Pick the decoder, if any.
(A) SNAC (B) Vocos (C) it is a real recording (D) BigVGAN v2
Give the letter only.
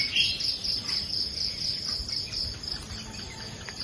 C